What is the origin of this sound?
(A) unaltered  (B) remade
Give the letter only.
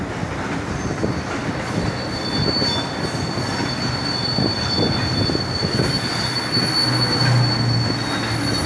A